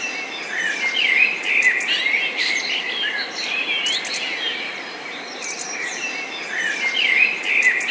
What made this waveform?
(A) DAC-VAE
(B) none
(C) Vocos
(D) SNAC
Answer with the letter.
B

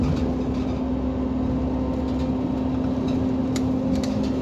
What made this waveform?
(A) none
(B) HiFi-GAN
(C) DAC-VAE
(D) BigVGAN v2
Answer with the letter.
A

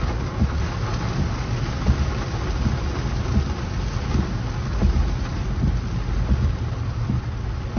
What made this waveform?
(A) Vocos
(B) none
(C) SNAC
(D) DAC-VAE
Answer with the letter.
B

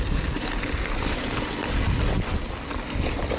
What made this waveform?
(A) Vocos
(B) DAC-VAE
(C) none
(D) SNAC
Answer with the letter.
C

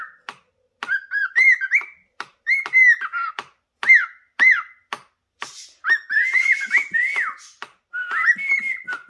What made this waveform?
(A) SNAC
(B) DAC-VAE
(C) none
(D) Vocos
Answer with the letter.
C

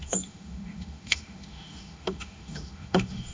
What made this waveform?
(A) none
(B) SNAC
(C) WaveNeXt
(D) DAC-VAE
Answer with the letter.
D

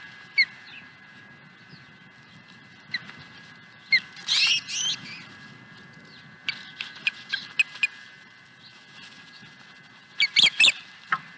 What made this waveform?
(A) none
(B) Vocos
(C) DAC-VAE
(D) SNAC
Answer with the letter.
A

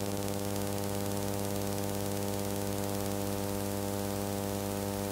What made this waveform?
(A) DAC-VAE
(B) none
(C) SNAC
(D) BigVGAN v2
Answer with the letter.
B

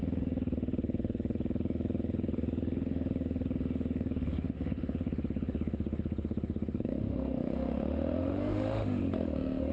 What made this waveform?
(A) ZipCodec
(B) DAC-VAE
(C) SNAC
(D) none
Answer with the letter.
B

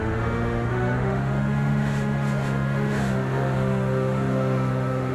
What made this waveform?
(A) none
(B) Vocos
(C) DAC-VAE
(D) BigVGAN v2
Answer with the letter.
C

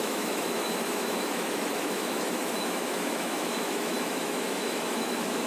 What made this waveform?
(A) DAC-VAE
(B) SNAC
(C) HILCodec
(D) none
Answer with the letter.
A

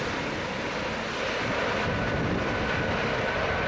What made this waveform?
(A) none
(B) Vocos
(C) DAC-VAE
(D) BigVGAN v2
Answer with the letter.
A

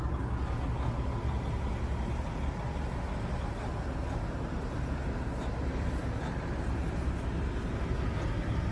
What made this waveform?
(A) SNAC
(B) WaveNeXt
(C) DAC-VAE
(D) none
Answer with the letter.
D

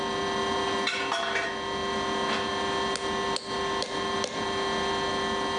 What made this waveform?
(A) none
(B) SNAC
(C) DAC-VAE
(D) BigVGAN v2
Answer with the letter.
A